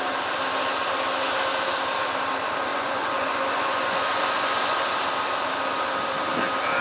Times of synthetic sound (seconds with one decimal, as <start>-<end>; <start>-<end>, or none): 2.7-4.8